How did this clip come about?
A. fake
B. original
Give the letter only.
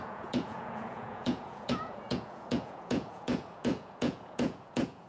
A